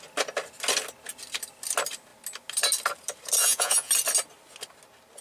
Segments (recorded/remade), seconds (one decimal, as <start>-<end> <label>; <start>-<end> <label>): 0.0-3.4 recorded; 3.4-3.9 remade; 3.9-5.2 recorded